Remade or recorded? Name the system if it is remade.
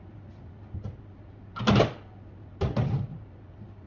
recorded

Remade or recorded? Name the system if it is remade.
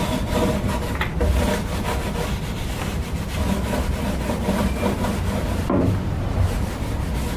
recorded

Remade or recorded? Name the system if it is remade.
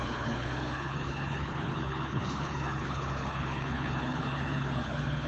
remade, codec, HILCodec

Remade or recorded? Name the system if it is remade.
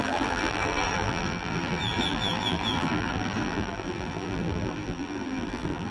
remade, vocoder, BigVGAN v2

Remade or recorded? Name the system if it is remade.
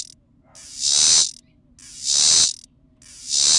recorded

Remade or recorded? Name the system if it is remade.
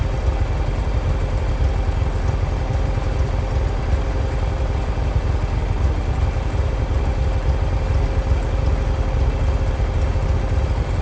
recorded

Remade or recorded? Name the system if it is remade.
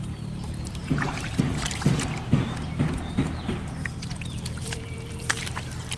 remade, vocoder, BigVGAN v2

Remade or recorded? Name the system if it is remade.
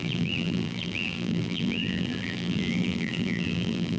remade, vocoder, BigVGAN v2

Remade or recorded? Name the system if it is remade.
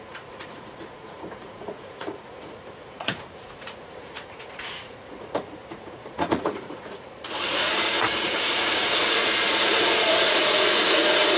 remade, vocoder, Vocos